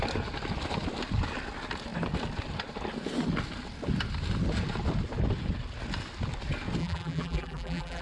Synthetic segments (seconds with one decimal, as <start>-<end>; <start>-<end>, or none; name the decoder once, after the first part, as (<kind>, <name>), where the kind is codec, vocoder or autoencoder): 6.8-8.0 (vocoder, BigVGAN v2)